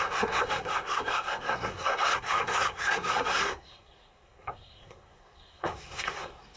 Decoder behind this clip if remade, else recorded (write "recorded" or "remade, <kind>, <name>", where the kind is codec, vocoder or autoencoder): remade, codec, SNAC